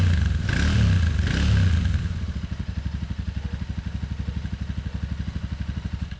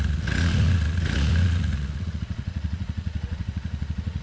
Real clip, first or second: first